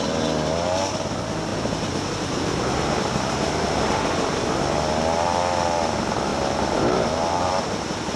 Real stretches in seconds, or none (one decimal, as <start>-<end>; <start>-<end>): 0.0-1.5; 3.8-6.3

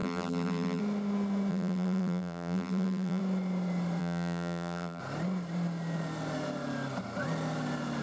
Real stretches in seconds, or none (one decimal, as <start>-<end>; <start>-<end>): 0.8-1.5; 3.2-4.0; 5.0-8.0

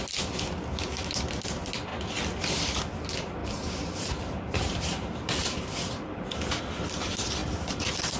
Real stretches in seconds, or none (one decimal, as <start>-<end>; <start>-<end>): 0.0-3.4; 6.6-7.4

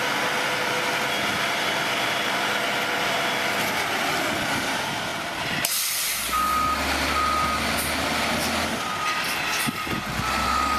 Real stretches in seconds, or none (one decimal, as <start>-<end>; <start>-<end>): 0.0-10.8

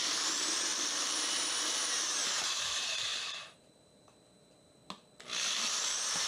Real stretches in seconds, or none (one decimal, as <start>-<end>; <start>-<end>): 0.7-1.3; 4.8-5.7

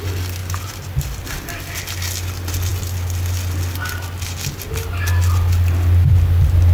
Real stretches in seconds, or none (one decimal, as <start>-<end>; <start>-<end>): 0.0-0.4; 1.6-6.7

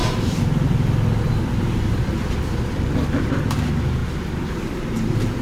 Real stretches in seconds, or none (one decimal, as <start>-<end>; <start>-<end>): 3.2-4.0; 4.5-5.4

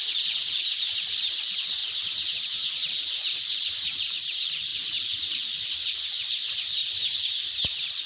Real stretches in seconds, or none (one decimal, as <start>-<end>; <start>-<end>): 1.8-2.3; 6.8-8.1